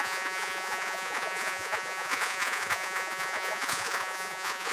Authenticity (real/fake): fake